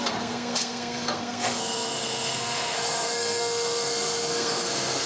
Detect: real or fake fake